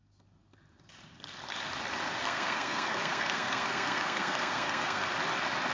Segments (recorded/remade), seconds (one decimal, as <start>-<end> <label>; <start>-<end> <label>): 0.0-2.2 recorded; 2.2-5.1 remade; 5.1-5.7 recorded